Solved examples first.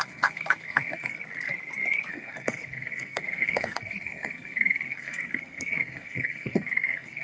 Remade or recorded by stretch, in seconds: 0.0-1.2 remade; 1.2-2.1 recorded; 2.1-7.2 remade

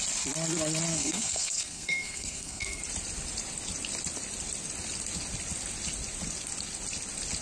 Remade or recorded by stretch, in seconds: 0.0-0.9 recorded; 0.9-2.8 remade; 2.8-7.4 recorded

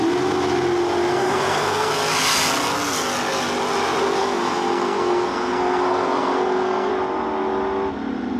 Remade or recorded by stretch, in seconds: 0.0-1.1 recorded; 1.1-1.9 remade; 1.9-4.2 recorded; 4.2-6.9 remade; 6.9-8.4 recorded

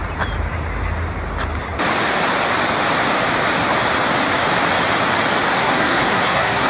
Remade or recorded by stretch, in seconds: 0.0-5.5 recorded; 5.5-6.7 remade

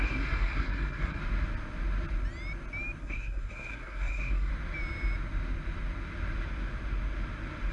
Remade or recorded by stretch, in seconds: 0.0-1.2 remade; 1.2-3.0 recorded; 3.0-4.5 remade; 4.5-7.7 recorded

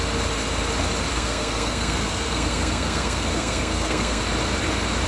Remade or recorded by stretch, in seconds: 0.0-1.1 recorded; 1.1-4.2 remade; 4.2-5.1 recorded

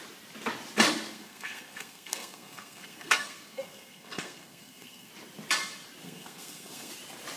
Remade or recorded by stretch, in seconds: 0.0-1.1 recorded; 1.1-5.1 remade; 5.1-6.0 recorded; 6.0-6.9 remade; 6.9-7.4 recorded